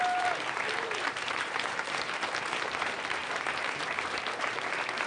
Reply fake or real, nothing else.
fake